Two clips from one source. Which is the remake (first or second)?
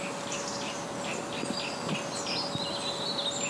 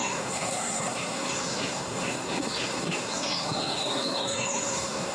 second